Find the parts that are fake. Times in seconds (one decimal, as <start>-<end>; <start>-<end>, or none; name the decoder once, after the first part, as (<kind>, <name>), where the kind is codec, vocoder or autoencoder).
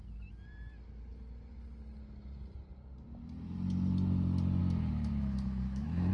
4.6-6.1 (autoencoder, DAC-VAE)